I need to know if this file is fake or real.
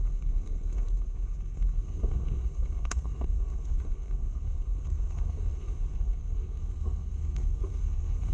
fake